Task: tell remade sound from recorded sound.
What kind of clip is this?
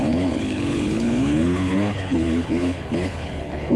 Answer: remade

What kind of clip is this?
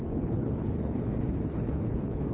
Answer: remade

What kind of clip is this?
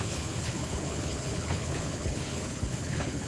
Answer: remade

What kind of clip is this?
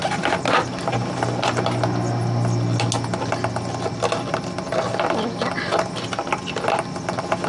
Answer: recorded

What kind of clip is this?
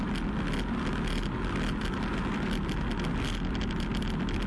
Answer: recorded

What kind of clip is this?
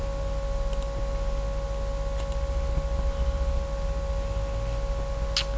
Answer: recorded